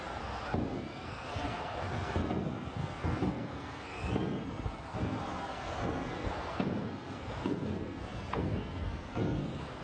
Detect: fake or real fake